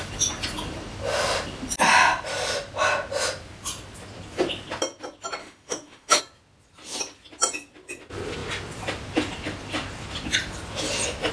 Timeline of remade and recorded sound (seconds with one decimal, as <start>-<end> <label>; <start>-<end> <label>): 0.0-5.4 recorded; 5.4-6.2 remade; 6.2-11.3 recorded

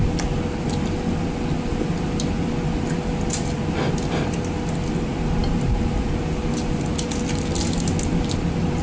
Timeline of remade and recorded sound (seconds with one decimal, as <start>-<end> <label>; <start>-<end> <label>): 0.0-8.8 recorded

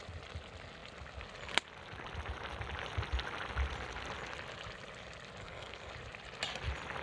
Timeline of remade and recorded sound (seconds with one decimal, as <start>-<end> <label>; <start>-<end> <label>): 0.0-5.4 recorded; 5.4-5.9 remade; 5.9-7.0 recorded

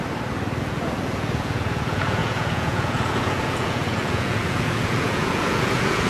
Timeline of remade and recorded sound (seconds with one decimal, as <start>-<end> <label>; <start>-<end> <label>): 0.0-0.6 recorded; 0.6-6.1 remade

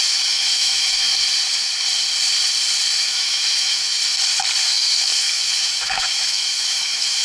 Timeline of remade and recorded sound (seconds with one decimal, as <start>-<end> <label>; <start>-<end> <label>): 0.0-1.1 remade; 1.1-3.0 recorded; 3.0-4.0 remade; 4.0-4.6 recorded; 4.6-7.2 remade

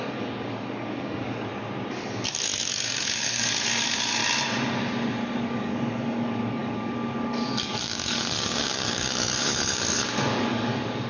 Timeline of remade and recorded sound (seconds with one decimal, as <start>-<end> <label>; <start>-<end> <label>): 0.0-1.5 remade; 1.5-2.0 recorded; 2.0-4.2 remade; 4.2-5.3 recorded; 5.3-11.1 remade

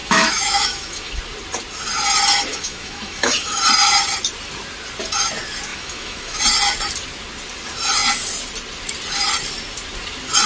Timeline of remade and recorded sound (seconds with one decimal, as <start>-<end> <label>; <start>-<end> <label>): 0.0-1.2 remade; 1.2-2.5 recorded; 2.5-3.6 remade; 3.6-5.7 recorded; 5.7-6.4 remade; 6.4-10.5 recorded